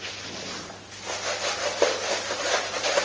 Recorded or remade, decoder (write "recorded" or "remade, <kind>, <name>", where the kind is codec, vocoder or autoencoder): recorded